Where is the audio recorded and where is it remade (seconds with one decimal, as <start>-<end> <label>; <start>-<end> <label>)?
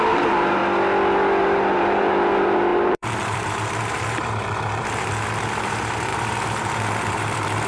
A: 0.0-0.6 remade; 0.6-1.4 recorded; 1.4-7.7 remade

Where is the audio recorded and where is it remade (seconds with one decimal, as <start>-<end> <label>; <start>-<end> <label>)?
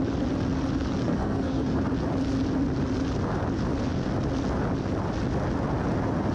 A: 0.0-1.0 recorded; 1.0-1.8 remade; 1.8-6.3 recorded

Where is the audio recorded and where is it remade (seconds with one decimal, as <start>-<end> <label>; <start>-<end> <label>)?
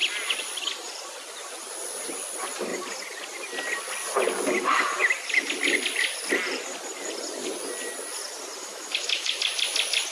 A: 0.0-8.6 recorded; 8.6-9.3 remade; 9.3-10.1 recorded